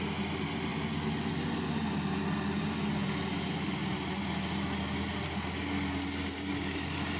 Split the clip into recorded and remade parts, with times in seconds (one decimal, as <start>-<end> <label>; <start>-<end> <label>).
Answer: 0.0-7.2 recorded